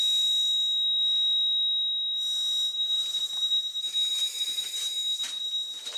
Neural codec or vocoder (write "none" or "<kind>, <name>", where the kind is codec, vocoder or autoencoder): none